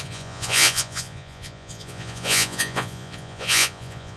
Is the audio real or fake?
fake